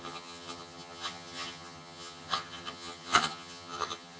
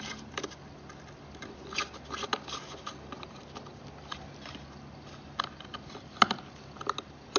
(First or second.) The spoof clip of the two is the first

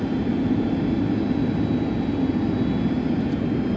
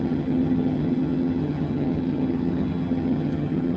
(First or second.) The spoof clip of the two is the second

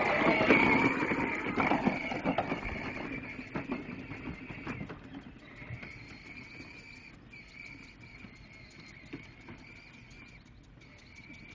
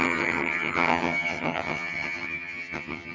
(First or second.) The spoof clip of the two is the second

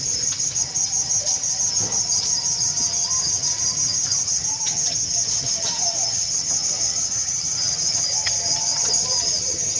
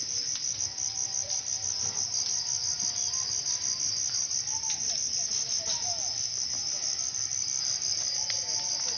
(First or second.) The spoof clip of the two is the first